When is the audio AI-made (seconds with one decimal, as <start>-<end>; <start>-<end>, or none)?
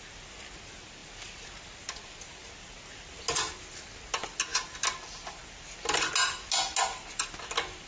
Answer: none